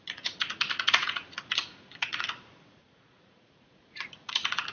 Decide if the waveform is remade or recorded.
remade